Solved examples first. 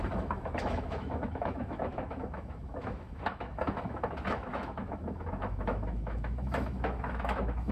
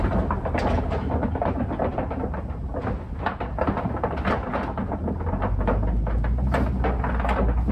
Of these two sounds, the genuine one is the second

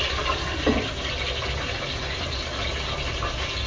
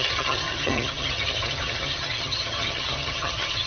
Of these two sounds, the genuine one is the first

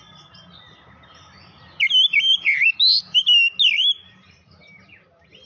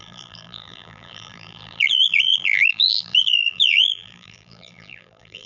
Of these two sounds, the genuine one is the first